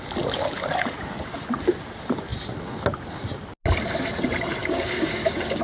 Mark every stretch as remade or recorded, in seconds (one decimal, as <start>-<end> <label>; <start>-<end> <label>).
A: 0.0-4.6 recorded; 4.6-5.6 remade